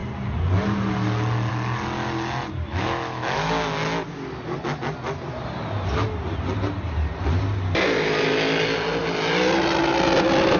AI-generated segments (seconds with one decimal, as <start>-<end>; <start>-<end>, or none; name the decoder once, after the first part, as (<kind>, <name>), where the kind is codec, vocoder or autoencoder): 2.7-3.5 (autoencoder, DAC-VAE)